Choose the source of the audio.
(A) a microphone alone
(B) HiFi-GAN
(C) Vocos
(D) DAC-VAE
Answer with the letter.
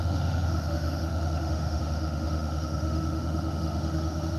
D